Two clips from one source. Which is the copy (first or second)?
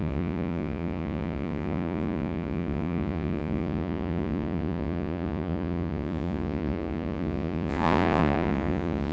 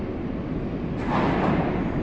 first